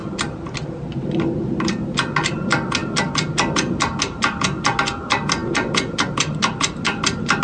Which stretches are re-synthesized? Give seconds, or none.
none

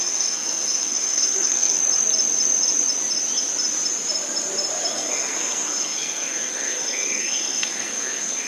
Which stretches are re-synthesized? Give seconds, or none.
0.0-1.8 (codec, SNAC); 4.9-8.5

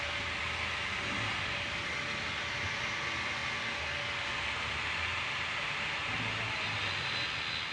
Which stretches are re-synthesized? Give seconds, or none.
none

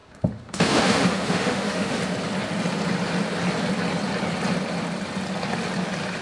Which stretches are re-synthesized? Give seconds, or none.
0.0-2.0 (autoencoder, DAC-VAE)

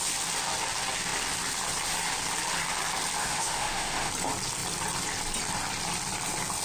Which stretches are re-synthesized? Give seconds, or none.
3.2-4.1 (autoencoder, DAC-VAE)